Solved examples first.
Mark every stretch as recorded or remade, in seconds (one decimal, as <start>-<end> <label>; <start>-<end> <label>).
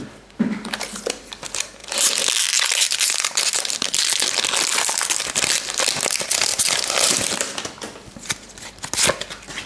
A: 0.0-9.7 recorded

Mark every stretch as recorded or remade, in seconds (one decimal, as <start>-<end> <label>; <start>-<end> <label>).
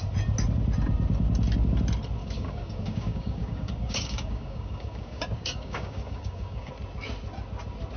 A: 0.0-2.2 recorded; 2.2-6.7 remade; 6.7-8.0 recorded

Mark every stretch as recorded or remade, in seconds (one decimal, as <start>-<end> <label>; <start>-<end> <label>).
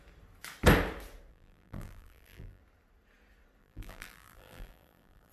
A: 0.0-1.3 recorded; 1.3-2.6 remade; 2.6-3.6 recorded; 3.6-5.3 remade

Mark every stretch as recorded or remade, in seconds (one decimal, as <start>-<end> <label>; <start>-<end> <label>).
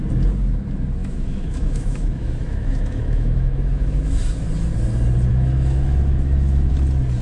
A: 0.0-1.0 recorded; 1.0-4.0 remade; 4.0-5.3 recorded; 5.3-6.7 remade; 6.7-7.2 recorded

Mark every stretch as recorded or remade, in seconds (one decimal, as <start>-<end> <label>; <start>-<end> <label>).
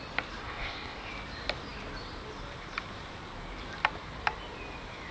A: 0.0-0.4 recorded; 0.4-1.1 remade; 1.1-5.1 recorded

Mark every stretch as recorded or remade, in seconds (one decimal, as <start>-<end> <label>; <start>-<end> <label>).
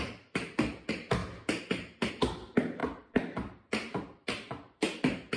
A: 0.0-1.2 remade; 1.2-2.1 recorded; 2.1-5.4 remade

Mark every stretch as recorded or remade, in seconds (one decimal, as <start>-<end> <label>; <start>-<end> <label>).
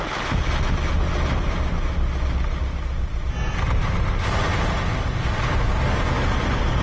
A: 0.0-6.8 recorded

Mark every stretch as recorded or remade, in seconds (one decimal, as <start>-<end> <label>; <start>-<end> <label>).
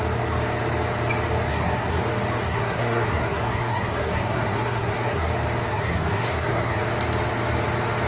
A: 0.0-1.5 recorded; 1.5-2.0 remade; 2.0-2.4 recorded; 2.4-5.3 remade; 5.3-5.7 recorded; 5.7-6.8 remade; 6.8-8.1 recorded